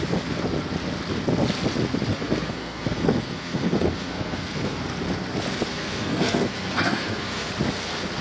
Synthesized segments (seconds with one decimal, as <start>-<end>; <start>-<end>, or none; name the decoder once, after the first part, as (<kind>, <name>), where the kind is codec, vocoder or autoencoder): 2.1-4.8 (codec, SNAC); 5.7-7.5